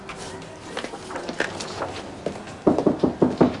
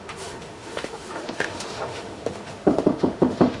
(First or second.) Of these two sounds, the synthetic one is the second